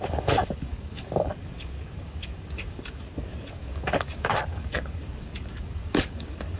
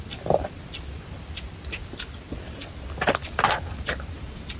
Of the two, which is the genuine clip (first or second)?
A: second